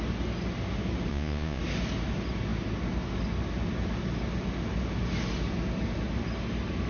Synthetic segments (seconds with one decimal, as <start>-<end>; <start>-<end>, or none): 1.1-1.6